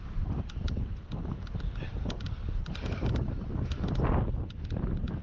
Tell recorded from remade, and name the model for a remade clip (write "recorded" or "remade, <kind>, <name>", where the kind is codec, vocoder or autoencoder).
recorded